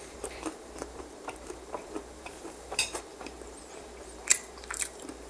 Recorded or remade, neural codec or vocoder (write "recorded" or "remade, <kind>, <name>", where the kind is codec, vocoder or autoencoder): remade, vocoder, BigVGAN v2